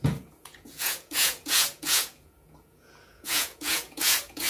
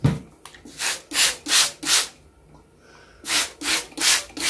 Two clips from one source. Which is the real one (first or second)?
second